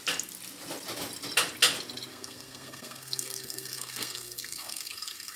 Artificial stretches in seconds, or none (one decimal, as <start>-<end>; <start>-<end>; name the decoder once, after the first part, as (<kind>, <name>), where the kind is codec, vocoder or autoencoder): 2.1-5.4 (codec, SNAC)